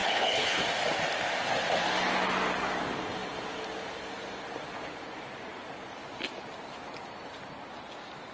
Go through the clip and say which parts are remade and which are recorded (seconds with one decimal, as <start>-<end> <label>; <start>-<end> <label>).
0.0-0.6 remade; 0.6-8.3 recorded

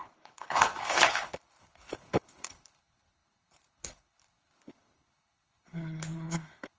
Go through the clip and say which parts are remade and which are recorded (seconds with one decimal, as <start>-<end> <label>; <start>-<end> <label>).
0.0-6.8 remade

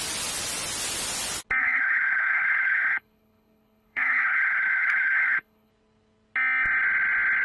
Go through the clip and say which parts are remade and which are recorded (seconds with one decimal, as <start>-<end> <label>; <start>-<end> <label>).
0.0-1.6 recorded; 1.6-5.7 remade; 5.7-7.4 recorded

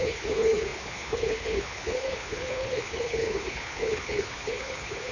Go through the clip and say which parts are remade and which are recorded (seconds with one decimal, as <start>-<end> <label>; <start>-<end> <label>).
0.0-5.1 remade

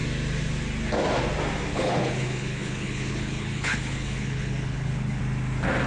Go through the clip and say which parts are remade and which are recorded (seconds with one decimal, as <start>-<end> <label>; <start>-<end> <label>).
0.0-1.7 recorded; 1.7-5.2 remade; 5.2-5.9 recorded

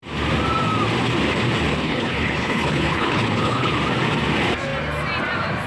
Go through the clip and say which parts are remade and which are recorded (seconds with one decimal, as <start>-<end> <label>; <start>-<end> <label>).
0.0-1.7 recorded; 1.7-3.7 remade; 3.7-5.7 recorded